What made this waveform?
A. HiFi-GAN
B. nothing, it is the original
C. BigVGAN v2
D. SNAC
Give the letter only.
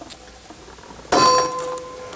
B